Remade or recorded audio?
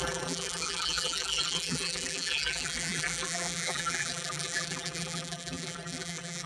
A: remade